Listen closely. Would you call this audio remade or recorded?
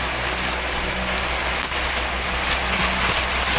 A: recorded